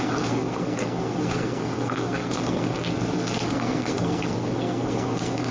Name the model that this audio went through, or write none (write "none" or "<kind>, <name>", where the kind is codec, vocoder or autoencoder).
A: codec, SNAC